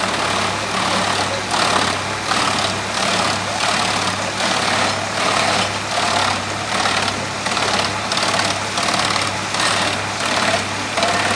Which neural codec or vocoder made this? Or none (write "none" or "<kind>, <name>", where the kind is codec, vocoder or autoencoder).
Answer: none